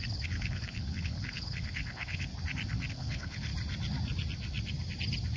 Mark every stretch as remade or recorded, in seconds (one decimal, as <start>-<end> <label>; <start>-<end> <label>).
0.0-2.3 remade; 2.3-2.9 recorded; 2.9-3.5 remade; 3.5-5.4 recorded